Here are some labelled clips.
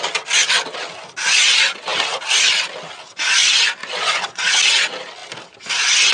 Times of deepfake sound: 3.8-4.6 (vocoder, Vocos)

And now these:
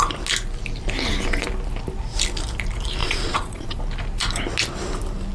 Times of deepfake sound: 3.0-3.8 (vocoder, Vocos)

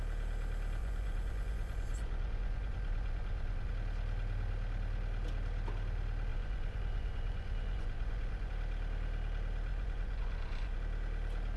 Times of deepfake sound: 0.8-3.7 (vocoder, Vocos); 6.3-8.5; 9.7-10.8

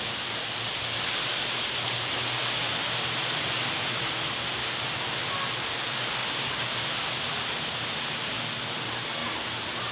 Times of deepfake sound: none

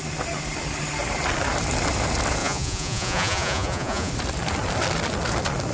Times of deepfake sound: 2.4-4.1 (vocoder, Vocos)

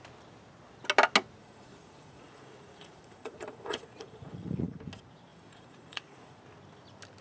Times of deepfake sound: 1.4-4.8 (vocoder, Vocos); 5.3-6.4